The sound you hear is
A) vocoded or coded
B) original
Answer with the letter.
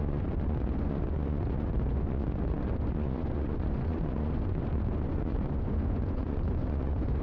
A